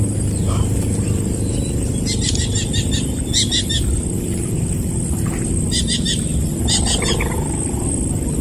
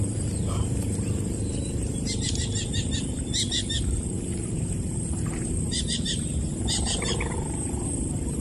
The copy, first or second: second